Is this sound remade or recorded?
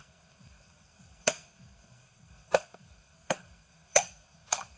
remade